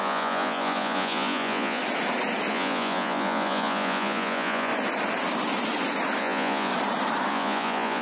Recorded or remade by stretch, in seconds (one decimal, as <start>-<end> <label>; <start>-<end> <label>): 0.0-1.8 remade; 1.8-2.5 recorded; 2.5-4.7 remade; 4.7-6.2 recorded; 6.2-6.7 remade; 6.7-7.3 recorded; 7.3-8.0 remade